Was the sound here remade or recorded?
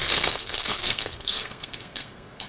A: remade